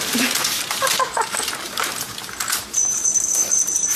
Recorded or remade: remade